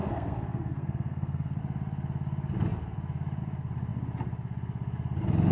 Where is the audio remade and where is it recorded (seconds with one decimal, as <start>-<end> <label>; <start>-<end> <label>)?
0.0-1.6 remade; 1.6-5.5 recorded

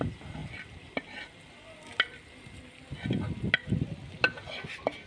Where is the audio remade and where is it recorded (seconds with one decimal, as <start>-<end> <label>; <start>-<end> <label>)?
0.0-5.1 recorded

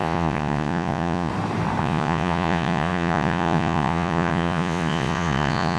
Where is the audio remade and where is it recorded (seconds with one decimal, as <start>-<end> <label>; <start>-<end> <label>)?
0.0-1.3 remade; 1.3-1.8 recorded; 1.8-5.8 remade

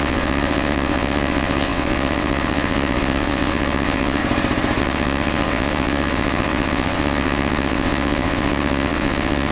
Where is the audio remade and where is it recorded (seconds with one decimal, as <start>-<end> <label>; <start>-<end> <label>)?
0.0-4.2 remade; 4.2-4.8 recorded; 4.8-9.5 remade

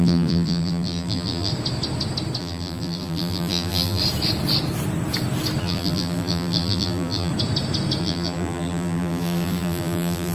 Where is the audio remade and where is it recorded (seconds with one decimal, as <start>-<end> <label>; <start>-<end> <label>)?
0.0-1.5 remade; 1.5-2.4 recorded; 2.4-4.0 remade; 4.0-5.6 recorded; 5.6-7.3 remade; 7.3-8.0 recorded; 8.0-10.3 remade